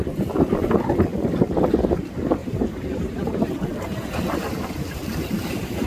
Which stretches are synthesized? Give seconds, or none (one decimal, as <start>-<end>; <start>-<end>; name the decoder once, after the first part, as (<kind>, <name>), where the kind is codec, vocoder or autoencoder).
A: 2.4-5.9 (vocoder, BigVGAN v2)

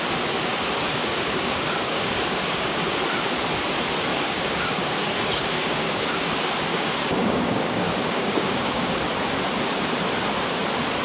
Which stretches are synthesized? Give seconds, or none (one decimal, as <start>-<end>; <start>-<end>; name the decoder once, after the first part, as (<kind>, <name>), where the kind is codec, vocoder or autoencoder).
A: 0.8-2.8 (codec, DAC); 4.1-6.1; 6.7-9.0

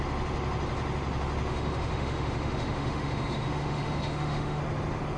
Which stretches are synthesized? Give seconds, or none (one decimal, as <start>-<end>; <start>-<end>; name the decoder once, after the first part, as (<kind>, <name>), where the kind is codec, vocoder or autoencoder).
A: 1.5-4.6 (autoencoder, DAC-VAE)